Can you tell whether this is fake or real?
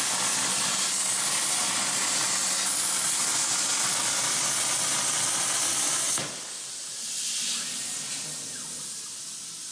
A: real